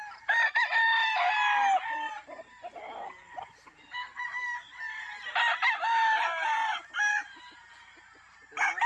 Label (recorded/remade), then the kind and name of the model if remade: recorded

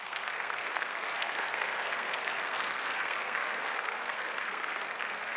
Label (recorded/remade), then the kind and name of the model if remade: remade, codec, SNAC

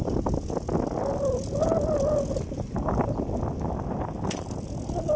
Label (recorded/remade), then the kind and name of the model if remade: recorded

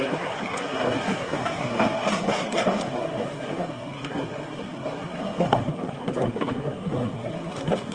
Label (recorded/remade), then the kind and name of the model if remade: remade, codec, SNAC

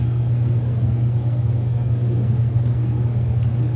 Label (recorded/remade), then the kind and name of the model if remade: remade, codec, SNAC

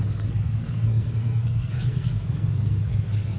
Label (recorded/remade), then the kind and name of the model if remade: remade, codec, SNAC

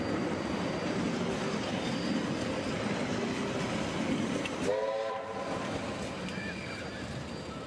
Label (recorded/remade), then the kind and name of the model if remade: recorded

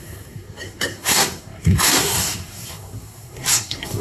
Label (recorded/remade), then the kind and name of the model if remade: remade, codec, SNAC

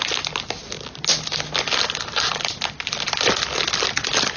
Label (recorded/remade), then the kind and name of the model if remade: recorded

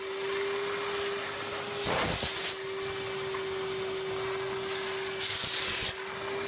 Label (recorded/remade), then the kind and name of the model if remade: recorded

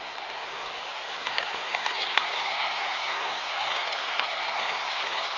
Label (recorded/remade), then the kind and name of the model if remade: remade, codec, SNAC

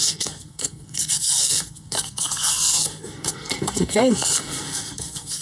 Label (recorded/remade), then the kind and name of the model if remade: remade, codec, SNAC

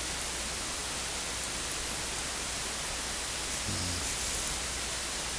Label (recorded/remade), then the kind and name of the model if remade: recorded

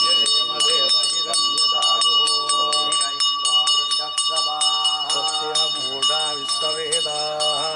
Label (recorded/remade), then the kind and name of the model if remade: recorded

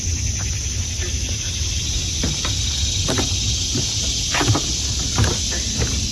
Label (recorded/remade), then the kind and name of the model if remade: recorded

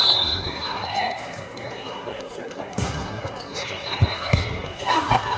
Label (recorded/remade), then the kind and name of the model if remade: remade, codec, SNAC